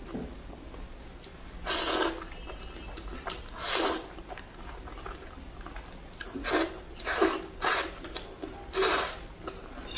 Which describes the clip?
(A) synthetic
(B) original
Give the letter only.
B